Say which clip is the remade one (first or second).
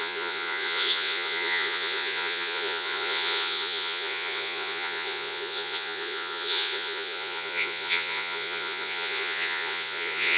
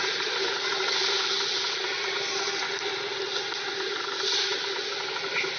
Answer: first